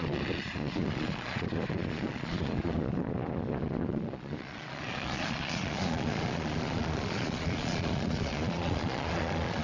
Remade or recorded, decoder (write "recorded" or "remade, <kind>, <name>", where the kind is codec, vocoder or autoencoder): remade, vocoder, Vocos